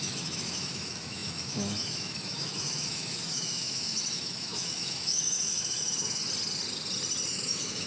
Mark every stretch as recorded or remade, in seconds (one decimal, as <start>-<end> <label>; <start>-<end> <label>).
0.0-6.2 remade; 6.2-7.3 recorded; 7.3-7.9 remade